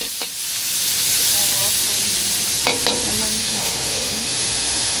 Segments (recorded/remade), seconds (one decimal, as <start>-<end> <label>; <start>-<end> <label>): 0.0-3.4 recorded; 3.4-5.0 remade

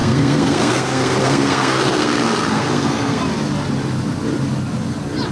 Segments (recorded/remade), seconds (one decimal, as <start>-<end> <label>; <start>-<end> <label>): 0.0-3.2 remade; 3.2-5.3 recorded

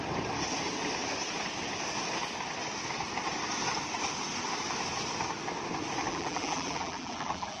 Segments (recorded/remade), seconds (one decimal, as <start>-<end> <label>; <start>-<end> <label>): 0.0-6.1 recorded; 6.1-7.6 remade

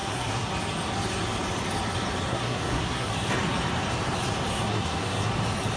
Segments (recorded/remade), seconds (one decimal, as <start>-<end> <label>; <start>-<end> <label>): 0.0-0.5 remade; 0.5-2.3 recorded; 2.3-3.1 remade; 3.1-4.5 recorded; 4.5-5.3 remade; 5.3-5.8 recorded

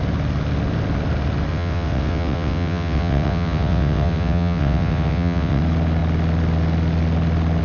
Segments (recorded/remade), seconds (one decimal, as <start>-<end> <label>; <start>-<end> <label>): 0.0-1.5 recorded; 1.5-5.6 remade; 5.6-7.6 recorded

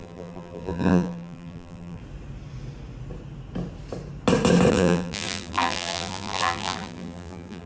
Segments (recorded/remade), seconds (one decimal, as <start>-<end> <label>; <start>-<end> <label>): 0.0-2.0 remade; 2.0-4.7 recorded; 4.7-7.7 remade